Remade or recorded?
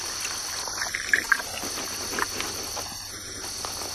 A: recorded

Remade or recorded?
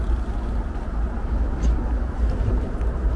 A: recorded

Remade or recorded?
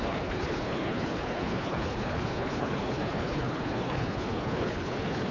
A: remade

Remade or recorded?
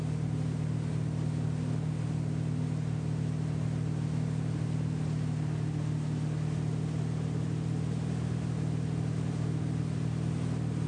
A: recorded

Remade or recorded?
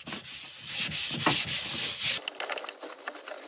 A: recorded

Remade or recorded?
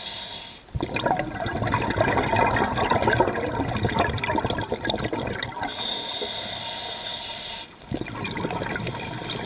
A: recorded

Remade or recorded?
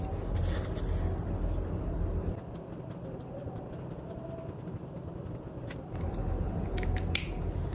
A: recorded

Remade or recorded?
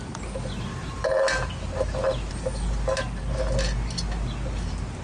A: recorded